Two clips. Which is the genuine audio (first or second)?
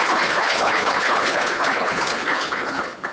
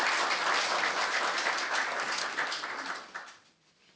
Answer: second